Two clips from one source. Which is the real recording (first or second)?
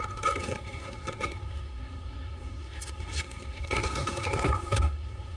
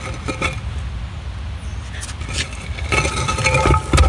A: second